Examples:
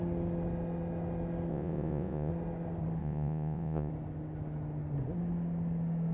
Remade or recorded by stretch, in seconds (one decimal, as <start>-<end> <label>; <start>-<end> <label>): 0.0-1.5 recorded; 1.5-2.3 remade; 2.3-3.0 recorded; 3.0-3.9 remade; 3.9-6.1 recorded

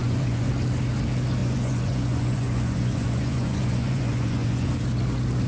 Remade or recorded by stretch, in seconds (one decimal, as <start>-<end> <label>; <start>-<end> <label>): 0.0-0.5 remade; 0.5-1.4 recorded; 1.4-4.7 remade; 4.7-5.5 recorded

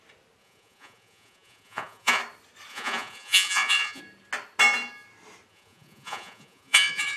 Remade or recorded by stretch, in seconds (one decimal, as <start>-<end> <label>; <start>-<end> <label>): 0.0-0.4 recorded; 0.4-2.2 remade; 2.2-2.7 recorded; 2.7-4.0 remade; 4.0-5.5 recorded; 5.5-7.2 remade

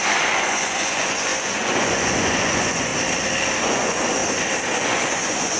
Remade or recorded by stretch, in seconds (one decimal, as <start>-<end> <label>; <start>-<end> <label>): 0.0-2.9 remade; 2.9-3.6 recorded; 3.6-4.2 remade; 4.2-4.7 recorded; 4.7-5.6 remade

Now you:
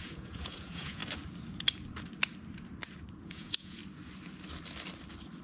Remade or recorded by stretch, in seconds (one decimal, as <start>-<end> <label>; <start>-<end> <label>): 0.0-1.0 remade; 1.0-3.2 recorded; 3.2-3.8 remade; 3.8-5.4 recorded

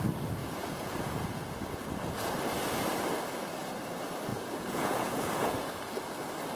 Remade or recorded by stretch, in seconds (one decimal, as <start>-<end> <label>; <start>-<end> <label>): 0.0-0.4 recorded; 0.4-1.5 remade; 1.5-4.3 recorded; 4.3-5.7 remade; 5.7-6.6 recorded